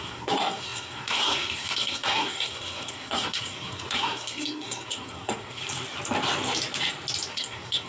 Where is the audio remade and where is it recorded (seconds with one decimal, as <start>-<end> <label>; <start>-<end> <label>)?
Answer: 0.0-5.6 remade; 5.6-7.3 recorded; 7.3-7.9 remade